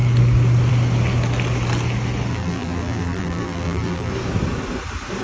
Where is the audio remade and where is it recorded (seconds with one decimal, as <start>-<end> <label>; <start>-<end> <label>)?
0.0-2.3 recorded; 2.3-4.1 remade; 4.1-5.2 recorded